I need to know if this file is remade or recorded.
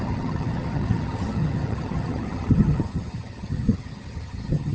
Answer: remade